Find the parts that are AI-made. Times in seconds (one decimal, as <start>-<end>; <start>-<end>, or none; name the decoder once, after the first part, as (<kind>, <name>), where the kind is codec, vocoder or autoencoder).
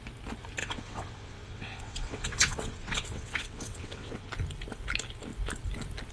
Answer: 0.6-4.3 (vocoder, WaveNeXt)